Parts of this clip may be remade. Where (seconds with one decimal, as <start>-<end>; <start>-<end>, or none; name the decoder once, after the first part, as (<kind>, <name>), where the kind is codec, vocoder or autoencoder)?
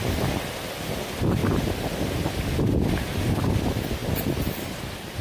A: none